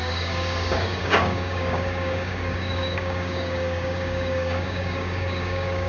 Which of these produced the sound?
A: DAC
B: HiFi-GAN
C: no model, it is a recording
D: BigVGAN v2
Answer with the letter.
A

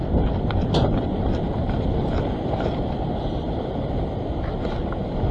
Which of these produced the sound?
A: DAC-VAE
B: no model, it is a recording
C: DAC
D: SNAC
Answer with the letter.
B